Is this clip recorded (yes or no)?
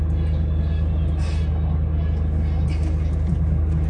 yes